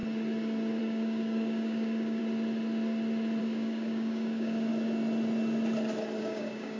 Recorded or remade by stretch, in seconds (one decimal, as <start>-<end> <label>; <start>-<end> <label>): 0.0-0.8 recorded; 0.8-2.2 remade; 2.2-3.4 recorded; 3.4-4.7 remade; 4.7-6.2 recorded; 6.2-6.8 remade